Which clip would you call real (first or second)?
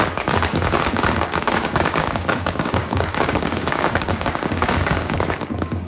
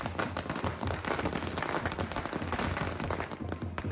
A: second